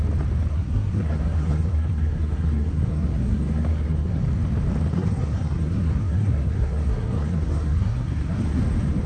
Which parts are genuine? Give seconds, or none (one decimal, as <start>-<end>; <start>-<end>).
0.0-0.5; 4.2-4.9; 8.6-9.1